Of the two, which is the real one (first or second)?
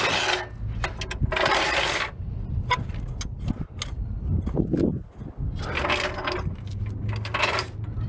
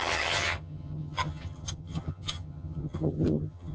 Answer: first